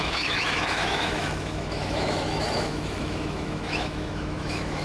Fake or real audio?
fake